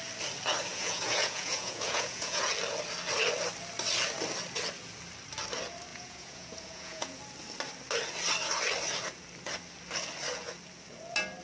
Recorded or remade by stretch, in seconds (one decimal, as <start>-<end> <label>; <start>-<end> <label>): 0.0-0.7 recorded; 0.7-2.5 remade; 2.5-5.9 recorded; 5.9-7.2 remade; 7.2-11.4 recorded